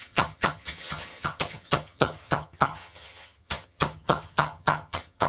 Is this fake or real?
fake